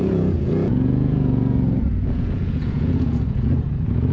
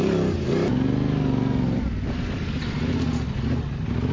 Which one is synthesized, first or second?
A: first